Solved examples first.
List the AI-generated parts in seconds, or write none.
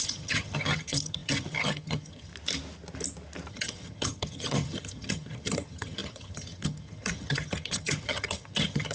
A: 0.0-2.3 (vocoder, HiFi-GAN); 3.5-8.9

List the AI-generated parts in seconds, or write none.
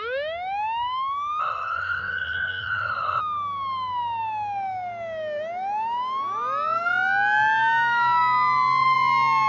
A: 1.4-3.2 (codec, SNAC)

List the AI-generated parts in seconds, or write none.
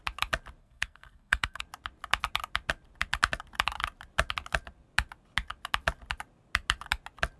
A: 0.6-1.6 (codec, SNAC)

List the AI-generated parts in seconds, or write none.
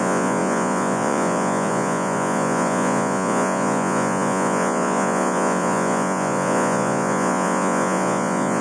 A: 0.0-8.6 (vocoder, Vocos)